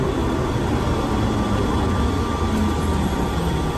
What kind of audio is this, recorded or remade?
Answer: recorded